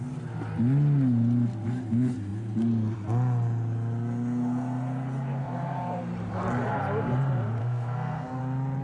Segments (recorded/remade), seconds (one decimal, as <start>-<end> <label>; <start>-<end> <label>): 0.0-7.6 recorded; 7.6-8.4 remade; 8.4-8.8 recorded